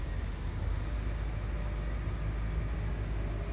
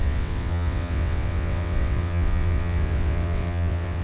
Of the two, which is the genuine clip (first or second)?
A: first